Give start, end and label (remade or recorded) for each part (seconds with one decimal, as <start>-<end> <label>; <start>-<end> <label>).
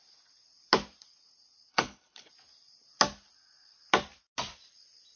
0.0-1.7 recorded; 1.7-2.3 remade; 2.3-5.2 recorded